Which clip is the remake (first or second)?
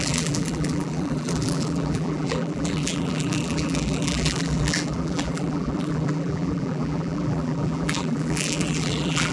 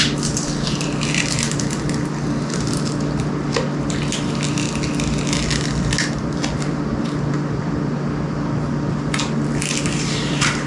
first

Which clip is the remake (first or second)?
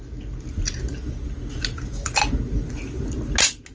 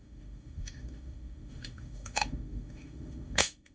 second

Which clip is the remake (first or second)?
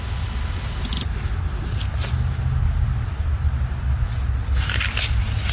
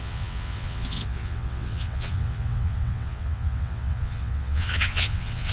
second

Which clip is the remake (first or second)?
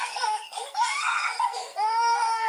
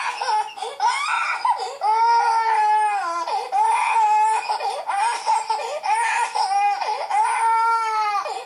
first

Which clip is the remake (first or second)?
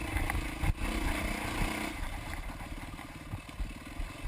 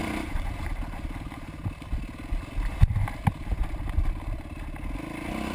second